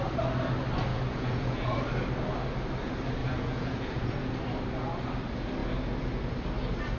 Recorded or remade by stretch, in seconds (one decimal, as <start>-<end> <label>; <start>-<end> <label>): 0.0-0.9 recorded; 0.9-1.8 remade; 1.8-3.2 recorded; 3.2-4.3 remade; 4.3-7.0 recorded